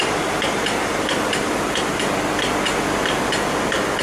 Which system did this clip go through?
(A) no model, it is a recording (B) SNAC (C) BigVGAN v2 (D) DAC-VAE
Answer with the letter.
A